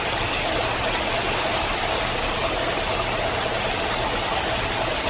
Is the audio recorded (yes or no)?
yes